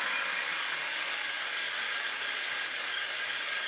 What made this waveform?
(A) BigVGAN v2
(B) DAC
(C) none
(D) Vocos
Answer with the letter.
B